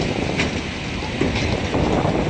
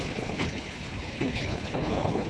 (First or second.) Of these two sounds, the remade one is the second